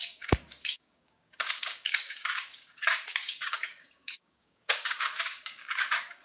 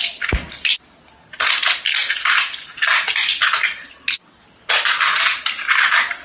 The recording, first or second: second